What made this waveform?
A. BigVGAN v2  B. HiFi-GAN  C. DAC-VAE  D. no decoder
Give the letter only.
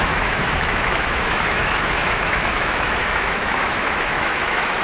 C